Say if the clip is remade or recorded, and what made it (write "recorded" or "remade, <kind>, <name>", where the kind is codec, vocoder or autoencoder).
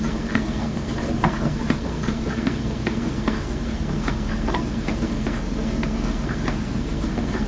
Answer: remade, codec, SNAC